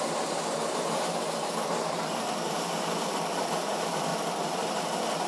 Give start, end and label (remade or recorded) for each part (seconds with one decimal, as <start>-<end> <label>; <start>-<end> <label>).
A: 0.0-4.1 remade; 4.1-4.7 recorded; 4.7-5.3 remade